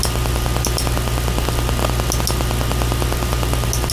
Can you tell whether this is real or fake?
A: real